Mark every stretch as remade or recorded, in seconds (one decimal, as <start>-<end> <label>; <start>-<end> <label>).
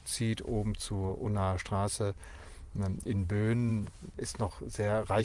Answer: 0.0-1.1 recorded; 1.1-1.6 remade; 1.6-3.7 recorded; 3.7-5.2 remade